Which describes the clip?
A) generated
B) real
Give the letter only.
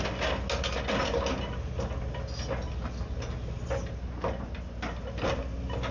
B